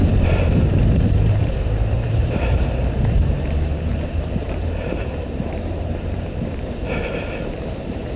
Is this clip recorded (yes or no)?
no